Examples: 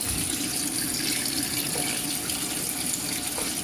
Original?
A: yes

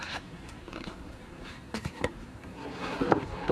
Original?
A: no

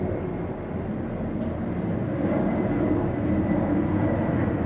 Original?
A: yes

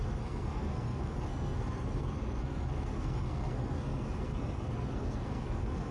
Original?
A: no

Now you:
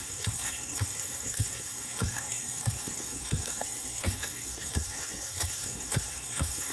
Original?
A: no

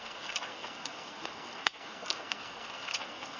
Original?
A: no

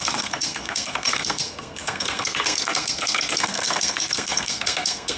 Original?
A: no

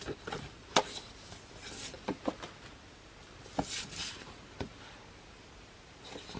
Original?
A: yes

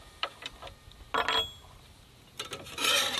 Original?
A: yes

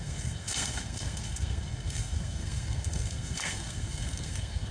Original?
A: no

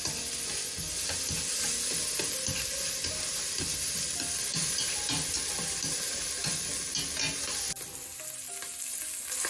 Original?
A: yes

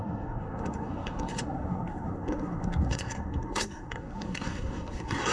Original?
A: no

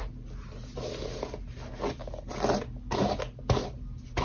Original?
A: yes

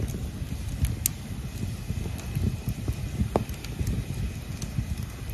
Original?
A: yes